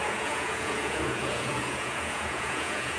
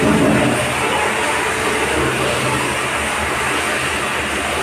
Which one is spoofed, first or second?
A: first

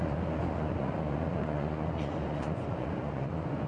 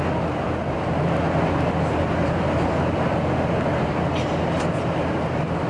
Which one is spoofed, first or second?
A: first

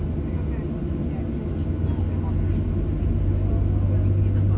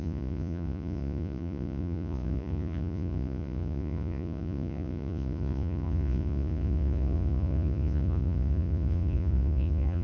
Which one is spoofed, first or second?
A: second